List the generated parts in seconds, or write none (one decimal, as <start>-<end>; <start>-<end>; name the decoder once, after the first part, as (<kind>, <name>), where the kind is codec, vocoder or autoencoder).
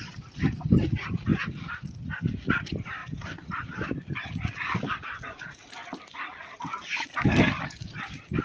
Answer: none